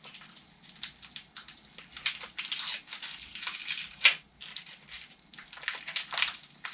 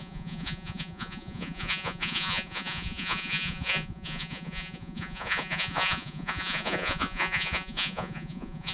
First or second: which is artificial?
second